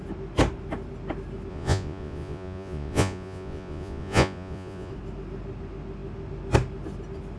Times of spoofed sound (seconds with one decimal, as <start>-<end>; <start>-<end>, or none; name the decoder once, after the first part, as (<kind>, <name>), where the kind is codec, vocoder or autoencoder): 1.5-4.9 (vocoder, Vocos)